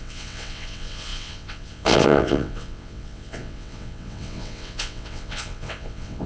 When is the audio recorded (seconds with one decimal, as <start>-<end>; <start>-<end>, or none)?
none